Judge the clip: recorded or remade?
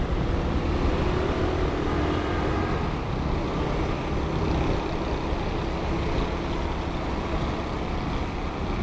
recorded